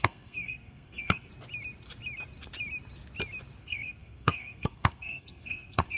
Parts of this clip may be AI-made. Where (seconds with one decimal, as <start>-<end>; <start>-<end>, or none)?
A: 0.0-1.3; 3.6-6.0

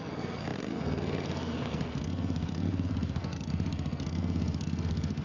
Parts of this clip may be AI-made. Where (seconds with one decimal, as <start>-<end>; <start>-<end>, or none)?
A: 0.0-5.2

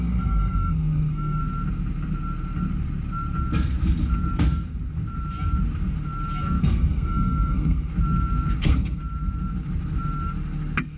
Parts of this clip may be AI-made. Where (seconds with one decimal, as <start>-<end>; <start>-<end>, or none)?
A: 0.0-1.4; 6.6-7.9; 8.6-9.0